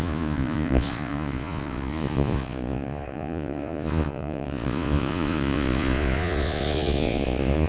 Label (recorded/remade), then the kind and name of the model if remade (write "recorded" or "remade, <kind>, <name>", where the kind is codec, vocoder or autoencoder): remade, vocoder, Vocos